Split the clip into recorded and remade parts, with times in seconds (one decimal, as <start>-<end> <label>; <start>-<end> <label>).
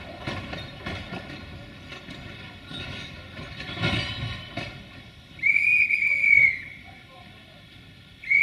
0.0-8.4 recorded